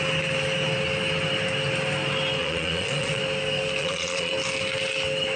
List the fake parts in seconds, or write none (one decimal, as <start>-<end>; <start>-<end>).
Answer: 2.4-3.2; 3.8-4.3